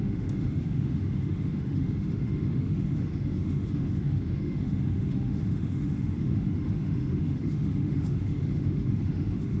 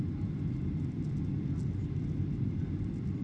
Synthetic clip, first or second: first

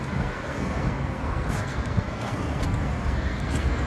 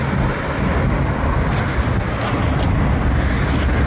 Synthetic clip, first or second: first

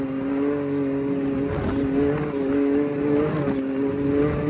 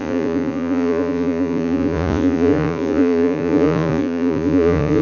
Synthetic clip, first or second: second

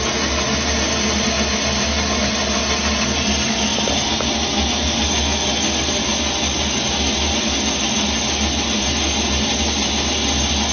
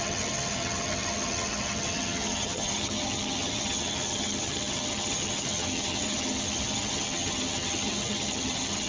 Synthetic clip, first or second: second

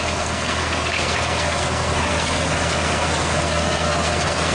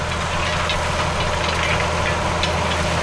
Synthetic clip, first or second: first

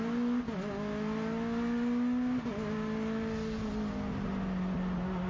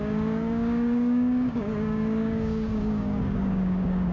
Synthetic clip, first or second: second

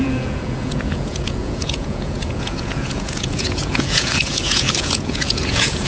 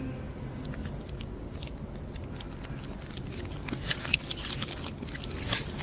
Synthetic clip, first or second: first